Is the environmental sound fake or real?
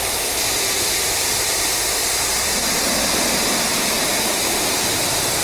fake